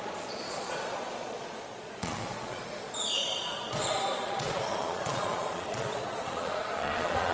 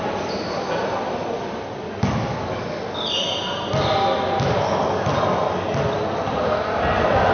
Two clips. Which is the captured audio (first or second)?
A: second